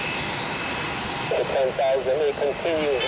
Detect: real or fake real